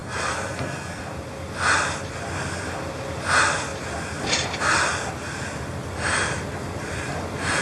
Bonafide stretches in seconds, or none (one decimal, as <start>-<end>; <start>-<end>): 1.0-7.6